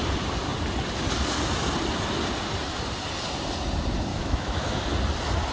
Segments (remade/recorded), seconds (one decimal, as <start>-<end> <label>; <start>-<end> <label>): 0.0-4.1 recorded; 4.1-4.8 remade; 4.8-5.5 recorded